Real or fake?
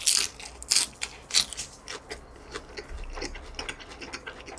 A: real